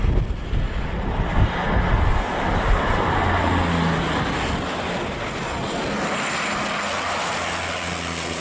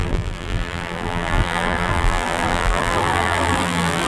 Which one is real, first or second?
first